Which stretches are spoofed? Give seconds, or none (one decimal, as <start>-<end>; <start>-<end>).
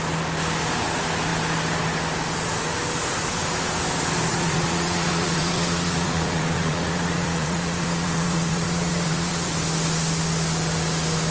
4.3-9.5